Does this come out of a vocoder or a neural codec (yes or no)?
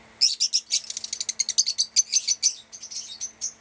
no